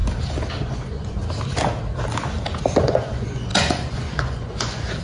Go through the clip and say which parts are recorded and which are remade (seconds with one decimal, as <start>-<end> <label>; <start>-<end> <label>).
0.0-0.6 recorded; 0.6-1.2 remade; 1.2-2.8 recorded; 2.8-5.0 remade